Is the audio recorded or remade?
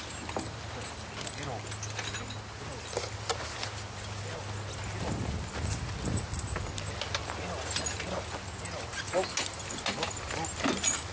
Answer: recorded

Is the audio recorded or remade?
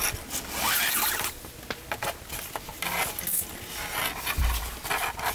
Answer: recorded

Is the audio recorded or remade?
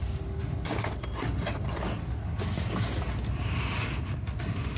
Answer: recorded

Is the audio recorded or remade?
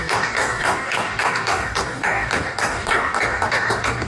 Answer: remade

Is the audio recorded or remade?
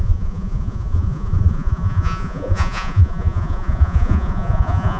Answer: remade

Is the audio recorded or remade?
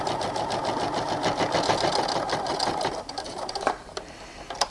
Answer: recorded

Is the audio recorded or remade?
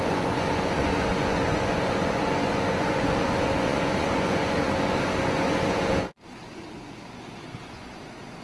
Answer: remade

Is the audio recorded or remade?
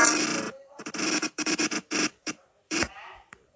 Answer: remade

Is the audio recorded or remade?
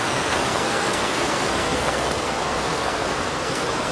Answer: remade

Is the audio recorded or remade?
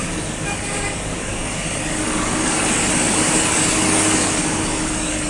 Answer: remade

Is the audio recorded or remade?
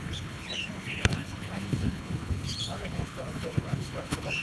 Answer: remade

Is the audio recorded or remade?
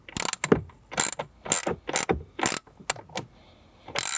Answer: recorded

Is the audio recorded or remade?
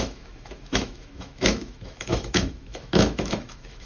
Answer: remade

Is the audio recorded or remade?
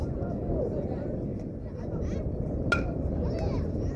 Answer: recorded